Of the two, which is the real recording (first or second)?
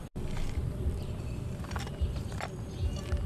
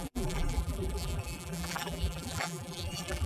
first